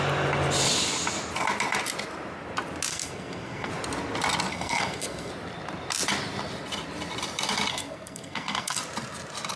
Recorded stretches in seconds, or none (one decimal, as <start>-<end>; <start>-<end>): 0.0-2.9; 3.7-4.5; 5.3-7.7; 8.8-9.6